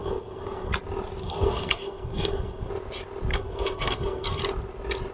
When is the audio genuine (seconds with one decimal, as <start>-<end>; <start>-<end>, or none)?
0.7-1.2; 2.7-3.3; 4.4-5.1